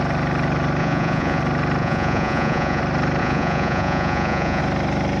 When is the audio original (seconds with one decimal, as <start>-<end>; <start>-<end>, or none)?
0.0-0.8; 1.4-1.8; 2.8-3.2; 4.6-5.2